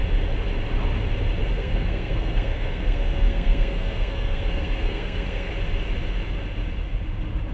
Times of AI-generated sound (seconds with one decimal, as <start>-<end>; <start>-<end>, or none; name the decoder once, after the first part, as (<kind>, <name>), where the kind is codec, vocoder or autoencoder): 1.4-5.5 (codec, SNAC)